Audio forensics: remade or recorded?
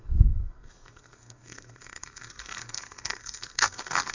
remade